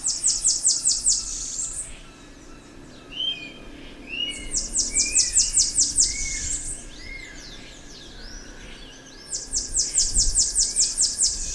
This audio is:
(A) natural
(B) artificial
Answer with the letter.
A